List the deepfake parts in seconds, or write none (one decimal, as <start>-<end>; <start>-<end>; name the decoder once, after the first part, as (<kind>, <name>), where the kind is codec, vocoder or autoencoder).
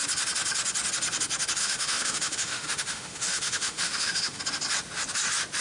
1.6-4.4 (autoencoder, DAC-VAE)